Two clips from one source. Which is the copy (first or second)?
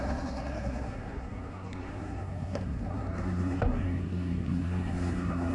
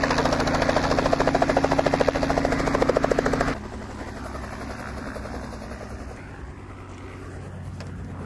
first